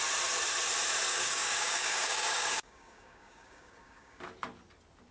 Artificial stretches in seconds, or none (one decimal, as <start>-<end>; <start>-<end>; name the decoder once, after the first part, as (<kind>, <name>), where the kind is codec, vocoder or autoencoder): 1.1-4.2 (codec, DAC)